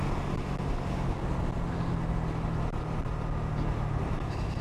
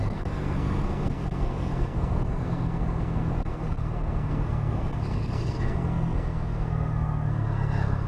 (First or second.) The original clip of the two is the first